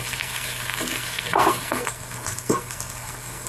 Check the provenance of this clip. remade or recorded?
remade